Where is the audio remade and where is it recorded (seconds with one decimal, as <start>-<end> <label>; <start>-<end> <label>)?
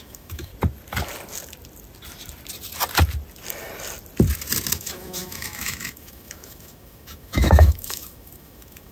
0.0-0.5 remade; 0.5-4.7 recorded; 4.7-8.9 remade